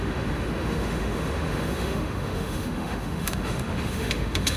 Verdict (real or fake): fake